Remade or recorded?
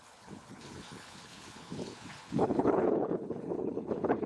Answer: remade